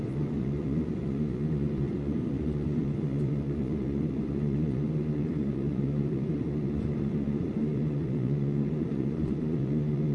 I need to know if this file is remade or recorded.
remade